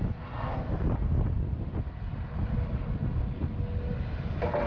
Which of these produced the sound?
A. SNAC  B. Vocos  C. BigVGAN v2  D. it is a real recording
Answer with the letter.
D